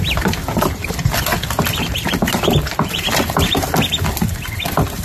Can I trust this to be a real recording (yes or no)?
yes